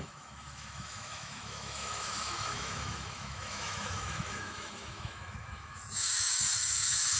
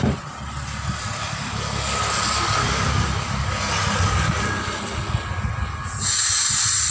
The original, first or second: second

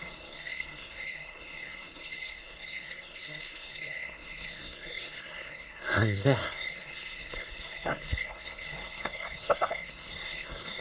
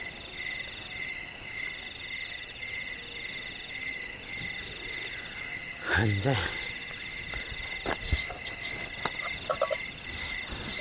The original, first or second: second